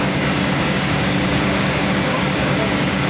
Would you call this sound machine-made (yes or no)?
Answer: yes